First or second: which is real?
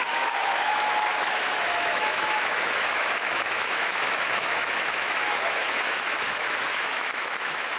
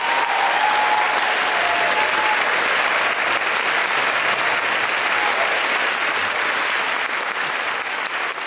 second